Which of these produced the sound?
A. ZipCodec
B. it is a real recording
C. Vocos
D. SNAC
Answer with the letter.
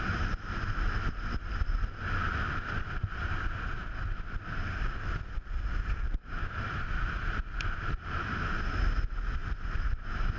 B